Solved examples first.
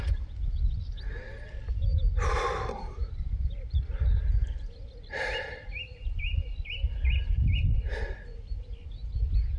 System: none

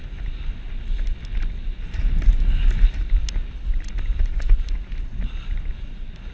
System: none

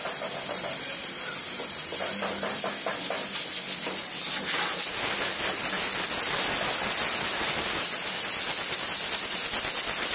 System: none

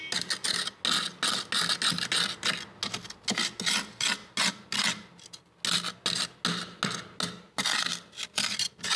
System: none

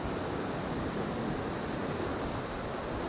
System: none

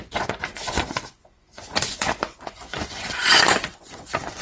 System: vocoder, Vocos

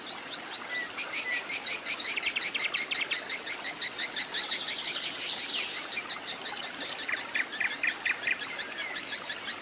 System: none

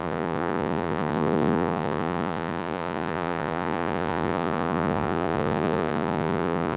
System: vocoder, Vocos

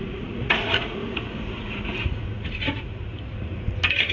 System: vocoder, Vocos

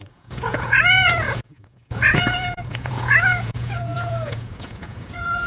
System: vocoder, Vocos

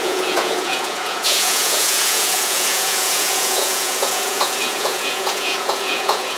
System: vocoder, Vocos